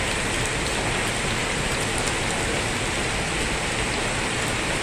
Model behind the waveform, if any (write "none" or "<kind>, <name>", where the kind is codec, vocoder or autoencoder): none